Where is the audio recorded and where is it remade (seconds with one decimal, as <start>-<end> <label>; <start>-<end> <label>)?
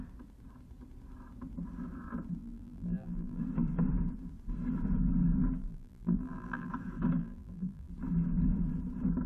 0.0-2.4 recorded; 2.4-3.4 remade; 3.4-5.6 recorded; 5.6-6.7 remade; 6.7-7.2 recorded; 7.2-7.9 remade; 7.9-9.3 recorded